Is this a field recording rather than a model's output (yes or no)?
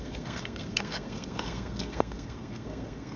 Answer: no